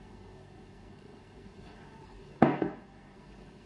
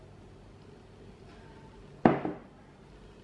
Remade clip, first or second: first